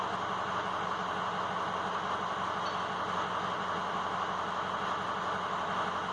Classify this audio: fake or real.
real